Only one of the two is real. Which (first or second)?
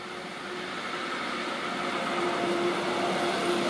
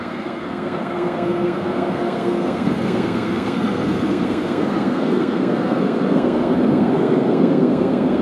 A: first